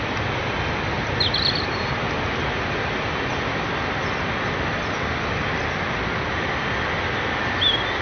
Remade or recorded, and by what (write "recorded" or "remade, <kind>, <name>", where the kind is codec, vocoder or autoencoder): recorded